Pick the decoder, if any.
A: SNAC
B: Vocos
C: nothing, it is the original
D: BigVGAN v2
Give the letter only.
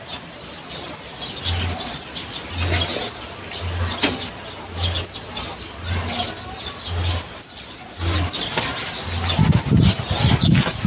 C